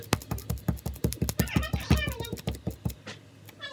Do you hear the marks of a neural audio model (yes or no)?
no